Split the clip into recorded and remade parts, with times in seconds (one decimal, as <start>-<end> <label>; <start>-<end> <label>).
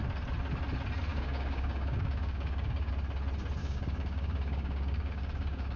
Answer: 0.0-1.1 recorded; 1.1-2.9 remade; 2.9-3.6 recorded; 3.6-5.8 remade